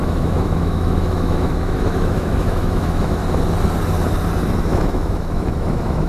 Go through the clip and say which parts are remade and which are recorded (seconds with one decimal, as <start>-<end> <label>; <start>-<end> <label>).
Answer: 0.0-3.2 remade; 3.2-4.6 recorded; 4.6-6.1 remade